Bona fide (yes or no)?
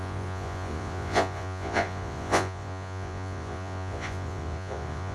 no